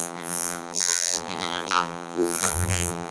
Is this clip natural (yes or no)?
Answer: no